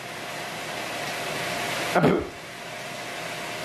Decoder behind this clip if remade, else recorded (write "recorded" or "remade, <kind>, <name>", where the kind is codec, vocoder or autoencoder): recorded